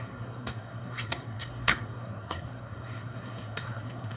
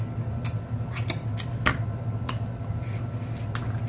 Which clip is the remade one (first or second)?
first